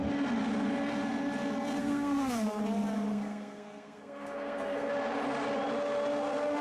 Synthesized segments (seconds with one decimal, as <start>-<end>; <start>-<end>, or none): 1.8-2.6; 3.1-4.9